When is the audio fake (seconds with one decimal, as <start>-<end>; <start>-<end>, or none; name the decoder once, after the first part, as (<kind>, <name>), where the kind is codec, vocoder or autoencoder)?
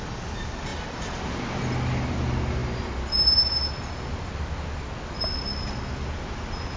none